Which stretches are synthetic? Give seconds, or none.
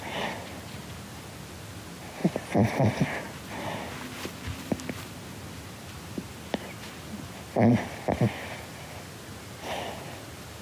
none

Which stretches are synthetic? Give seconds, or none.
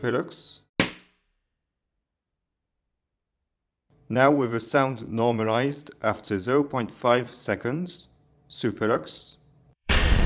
1.6-10.3 (vocoder, Vocos)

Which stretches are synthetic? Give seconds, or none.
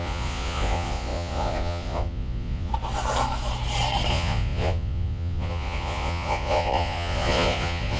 0.0-2.7 (vocoder, Vocos); 4.1-8.0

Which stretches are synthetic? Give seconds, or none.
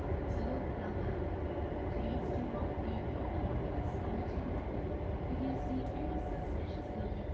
none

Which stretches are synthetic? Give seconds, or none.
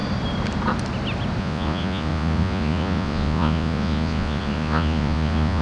1.4-5.6 (vocoder, Vocos)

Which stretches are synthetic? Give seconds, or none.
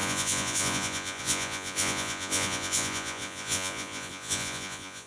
0.0-5.1 (vocoder, Vocos)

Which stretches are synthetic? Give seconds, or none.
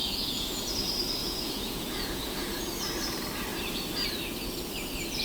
0.0-0.7 (vocoder, Vocos); 1.2-2.6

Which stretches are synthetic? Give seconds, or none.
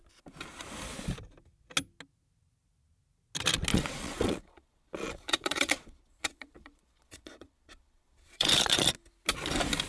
3.7-8.9 (vocoder, Vocos)